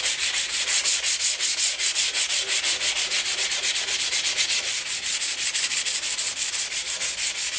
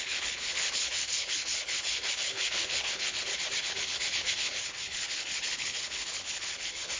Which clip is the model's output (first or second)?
second